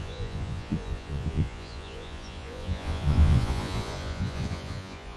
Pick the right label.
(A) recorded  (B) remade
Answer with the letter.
B